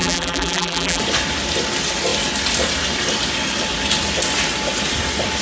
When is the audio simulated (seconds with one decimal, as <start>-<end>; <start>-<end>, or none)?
0.0-1.0